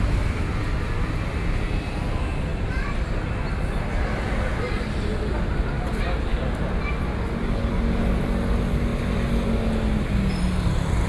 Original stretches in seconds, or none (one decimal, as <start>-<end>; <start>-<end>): 0.0-2.5; 3.1-11.1